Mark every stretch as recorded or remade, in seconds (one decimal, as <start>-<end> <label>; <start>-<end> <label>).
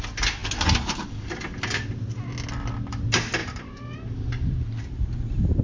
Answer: 0.0-3.4 recorded; 3.4-4.8 remade; 4.8-5.6 recorded